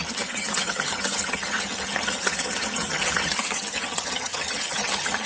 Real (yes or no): no